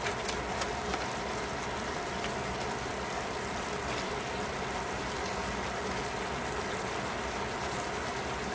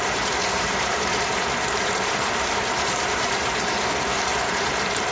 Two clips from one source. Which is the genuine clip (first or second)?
first